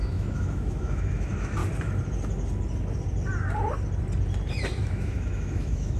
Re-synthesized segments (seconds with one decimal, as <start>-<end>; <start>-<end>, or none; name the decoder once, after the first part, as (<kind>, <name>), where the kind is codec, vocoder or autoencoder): 0.0-1.6 (autoencoder, DAC-VAE); 4.8-6.0